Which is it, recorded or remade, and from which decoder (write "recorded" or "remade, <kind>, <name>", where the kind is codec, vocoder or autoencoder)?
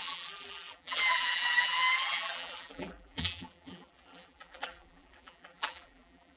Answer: remade, vocoder, BigVGAN v2